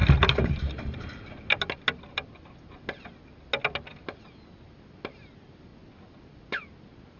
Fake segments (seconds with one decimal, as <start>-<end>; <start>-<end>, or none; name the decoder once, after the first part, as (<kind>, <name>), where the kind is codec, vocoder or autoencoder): none

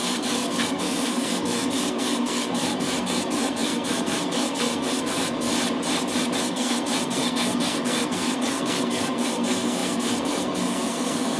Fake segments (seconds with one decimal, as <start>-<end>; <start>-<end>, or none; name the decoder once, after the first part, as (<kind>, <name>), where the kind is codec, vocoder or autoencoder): 0.0-5.5 (codec, SNAC); 6.4-11.4

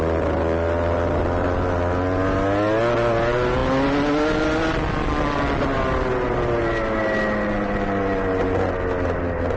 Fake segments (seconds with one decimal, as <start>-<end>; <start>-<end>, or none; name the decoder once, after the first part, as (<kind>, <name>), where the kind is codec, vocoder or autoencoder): none

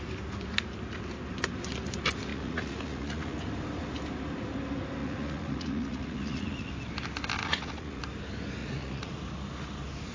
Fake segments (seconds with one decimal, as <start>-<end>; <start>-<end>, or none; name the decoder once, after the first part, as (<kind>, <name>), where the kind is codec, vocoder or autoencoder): 2.3-3.4 (vocoder, Vocos); 5.0-6.7; 7.4-8.0; 8.6-9.1

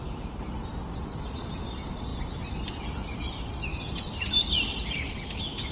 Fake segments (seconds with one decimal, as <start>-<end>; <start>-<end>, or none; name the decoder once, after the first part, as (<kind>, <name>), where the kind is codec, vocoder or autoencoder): none